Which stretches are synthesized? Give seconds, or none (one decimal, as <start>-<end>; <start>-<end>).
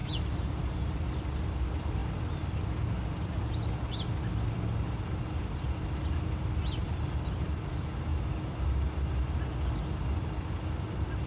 0.0-0.6; 8.1-9.1